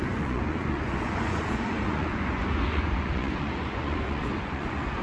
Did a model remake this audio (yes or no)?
yes